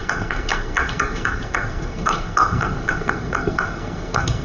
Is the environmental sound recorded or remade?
remade